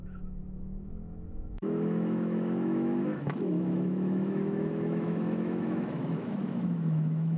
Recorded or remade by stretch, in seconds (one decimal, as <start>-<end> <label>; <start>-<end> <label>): 0.0-7.4 remade